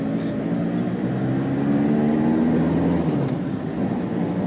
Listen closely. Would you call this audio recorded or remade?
recorded